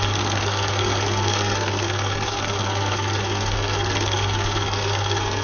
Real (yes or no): no